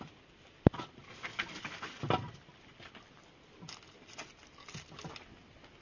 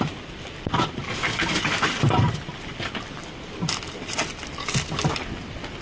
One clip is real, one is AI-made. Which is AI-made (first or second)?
second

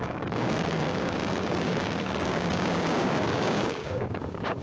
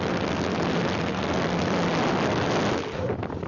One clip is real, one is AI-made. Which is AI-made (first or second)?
first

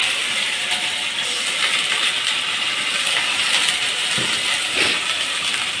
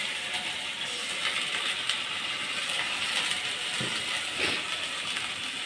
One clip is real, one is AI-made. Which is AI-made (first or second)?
first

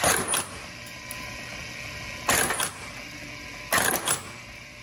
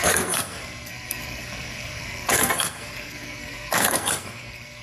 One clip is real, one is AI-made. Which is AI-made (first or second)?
second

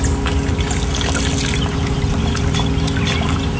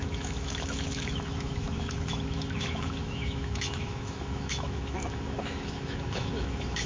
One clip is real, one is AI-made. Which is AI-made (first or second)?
second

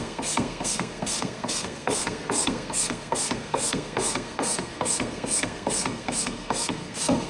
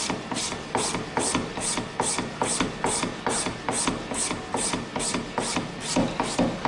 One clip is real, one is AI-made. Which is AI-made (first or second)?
first